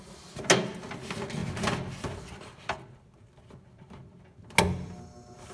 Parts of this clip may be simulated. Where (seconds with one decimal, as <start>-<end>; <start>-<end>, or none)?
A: none